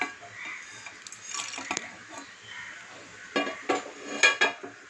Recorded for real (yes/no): yes